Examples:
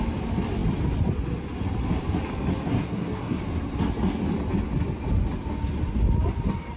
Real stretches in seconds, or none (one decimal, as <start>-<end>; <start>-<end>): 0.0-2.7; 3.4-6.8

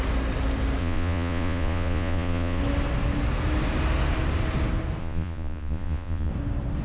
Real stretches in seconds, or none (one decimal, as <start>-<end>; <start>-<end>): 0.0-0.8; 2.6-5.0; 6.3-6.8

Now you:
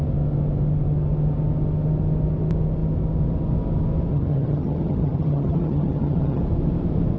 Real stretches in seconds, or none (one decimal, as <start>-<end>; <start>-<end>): 0.0-4.1; 6.4-7.2